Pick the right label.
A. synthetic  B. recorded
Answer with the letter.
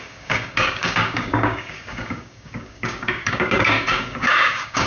A